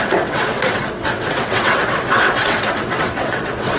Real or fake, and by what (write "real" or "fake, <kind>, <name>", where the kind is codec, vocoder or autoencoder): fake, vocoder, WaveNeXt